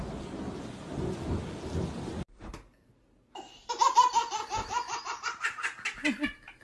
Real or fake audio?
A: real